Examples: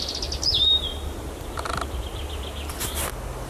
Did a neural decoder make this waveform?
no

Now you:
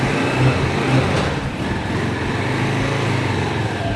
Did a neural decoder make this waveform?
no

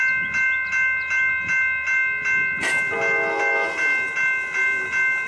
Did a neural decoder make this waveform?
no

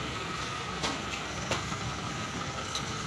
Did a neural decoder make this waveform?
yes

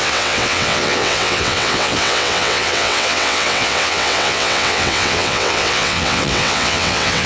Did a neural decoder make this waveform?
yes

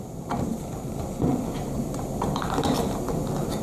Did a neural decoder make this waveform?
yes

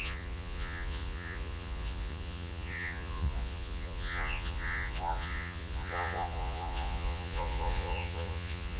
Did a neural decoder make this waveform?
yes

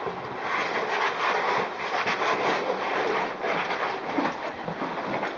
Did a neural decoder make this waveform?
no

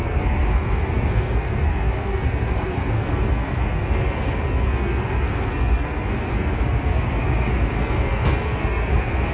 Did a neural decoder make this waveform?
yes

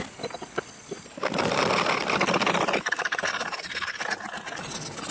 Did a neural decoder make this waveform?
no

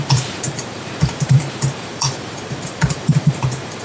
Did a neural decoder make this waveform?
yes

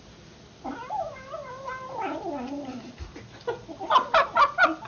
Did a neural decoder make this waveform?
no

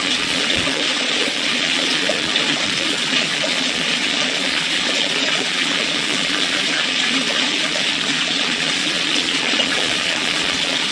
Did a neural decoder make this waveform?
yes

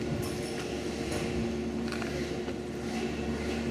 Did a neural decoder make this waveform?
no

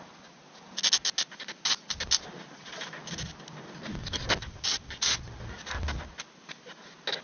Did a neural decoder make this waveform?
no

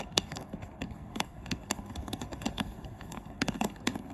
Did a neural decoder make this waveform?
yes